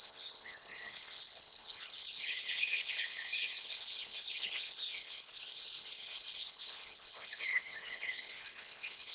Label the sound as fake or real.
fake